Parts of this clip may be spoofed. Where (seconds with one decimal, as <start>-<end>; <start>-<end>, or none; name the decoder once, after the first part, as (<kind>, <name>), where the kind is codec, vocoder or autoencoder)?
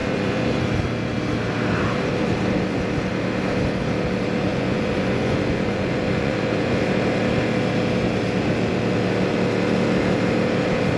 0.0-0.6 (vocoder, Vocos); 4.5-6.8